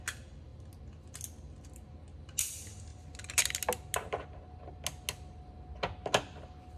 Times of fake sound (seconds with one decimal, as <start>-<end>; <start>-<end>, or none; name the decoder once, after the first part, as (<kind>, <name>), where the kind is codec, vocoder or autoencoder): none

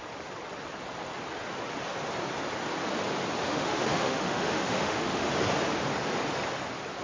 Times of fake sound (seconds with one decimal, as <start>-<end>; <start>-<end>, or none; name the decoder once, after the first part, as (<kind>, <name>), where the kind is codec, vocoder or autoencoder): 3.4-5.3 (autoencoder, DAC-VAE)

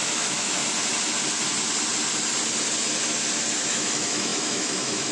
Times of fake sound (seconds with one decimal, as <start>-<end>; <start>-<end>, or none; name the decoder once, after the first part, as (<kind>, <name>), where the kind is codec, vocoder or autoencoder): 0.0-0.6 (autoencoder, DAC-VAE); 3.7-5.1